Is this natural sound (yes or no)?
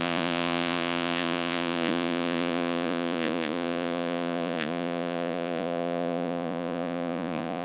no